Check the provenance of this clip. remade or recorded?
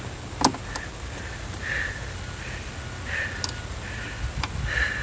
recorded